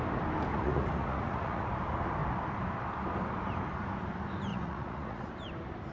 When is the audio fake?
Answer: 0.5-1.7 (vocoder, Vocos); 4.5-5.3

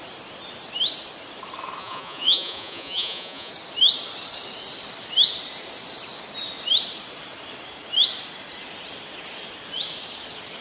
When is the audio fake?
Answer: 1.8-3.5 (vocoder, Vocos)